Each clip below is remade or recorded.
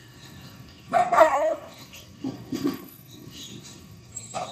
remade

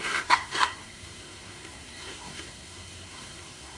remade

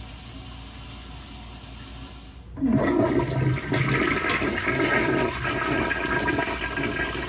recorded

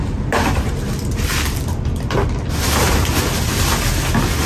recorded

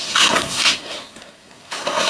remade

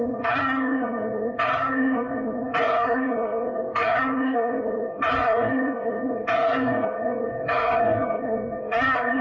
remade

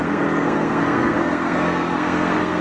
remade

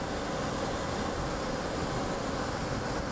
recorded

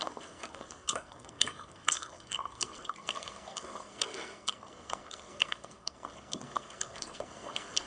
remade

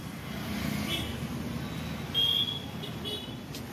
recorded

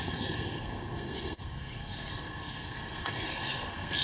remade